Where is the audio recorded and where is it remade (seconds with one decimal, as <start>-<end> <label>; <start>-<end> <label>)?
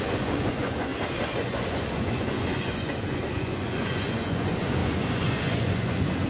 0.0-0.9 remade; 0.9-1.4 recorded; 1.4-6.3 remade